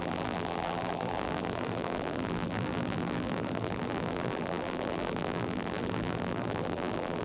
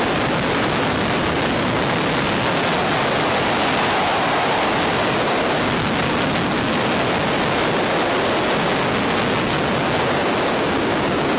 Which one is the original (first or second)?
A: second